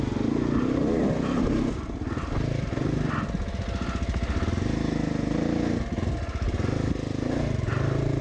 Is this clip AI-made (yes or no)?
no